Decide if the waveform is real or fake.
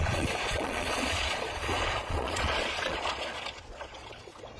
fake